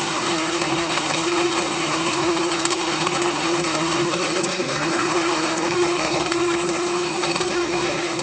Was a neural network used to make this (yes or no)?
yes